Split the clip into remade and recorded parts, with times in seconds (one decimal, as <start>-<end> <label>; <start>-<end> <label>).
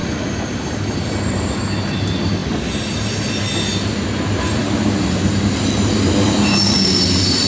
0.0-7.5 recorded